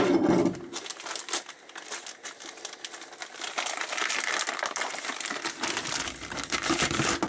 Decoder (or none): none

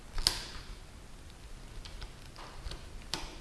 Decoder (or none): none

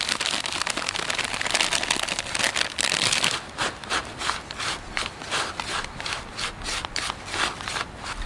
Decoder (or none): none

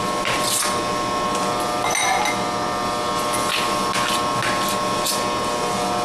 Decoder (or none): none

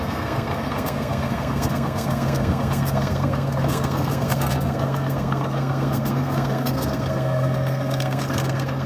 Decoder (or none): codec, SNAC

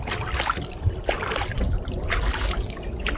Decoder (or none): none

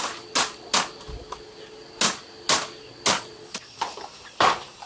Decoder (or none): none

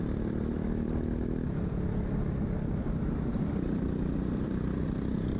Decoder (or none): vocoder, BigVGAN v2